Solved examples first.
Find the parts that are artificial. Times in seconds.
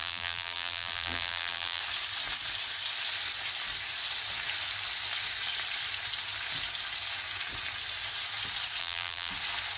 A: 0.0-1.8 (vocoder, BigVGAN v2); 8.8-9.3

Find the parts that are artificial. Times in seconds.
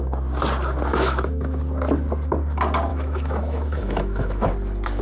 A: 0.9-1.6 (autoencoder, DAC-VAE); 2.9-4.5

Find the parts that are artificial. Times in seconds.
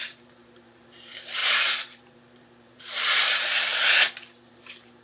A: 0.0-3.7 (vocoder, BigVGAN v2); 4.5-5.0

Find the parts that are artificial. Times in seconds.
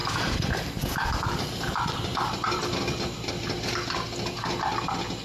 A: 2.1-3.7 (vocoder, BigVGAN v2)